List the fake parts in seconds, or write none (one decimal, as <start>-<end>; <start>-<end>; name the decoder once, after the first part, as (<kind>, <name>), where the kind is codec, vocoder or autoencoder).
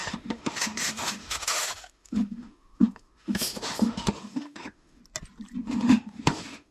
0.0-5.0 (autoencoder, DAC-VAE); 5.6-6.7